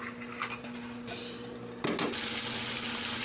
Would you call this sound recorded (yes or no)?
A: yes